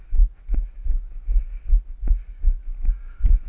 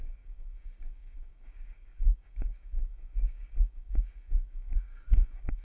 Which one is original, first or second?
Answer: first